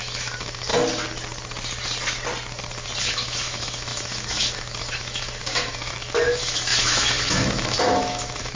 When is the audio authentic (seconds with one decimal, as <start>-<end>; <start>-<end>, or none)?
0.7-3.0